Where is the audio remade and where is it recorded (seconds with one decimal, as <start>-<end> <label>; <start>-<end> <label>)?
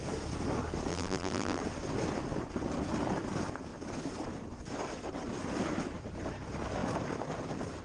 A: 0.0-0.9 recorded; 0.9-1.6 remade; 1.6-7.8 recorded